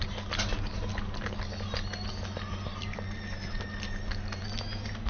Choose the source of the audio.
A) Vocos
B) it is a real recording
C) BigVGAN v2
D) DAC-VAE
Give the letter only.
B